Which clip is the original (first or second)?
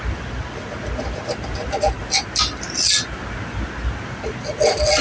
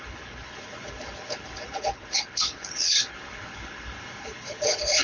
first